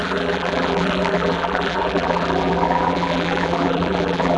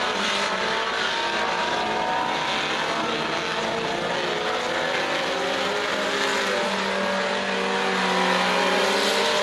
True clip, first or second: second